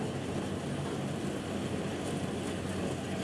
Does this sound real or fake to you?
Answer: real